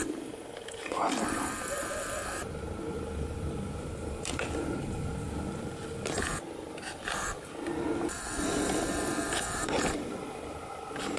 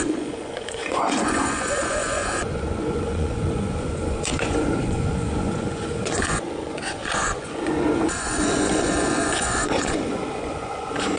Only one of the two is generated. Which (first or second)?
second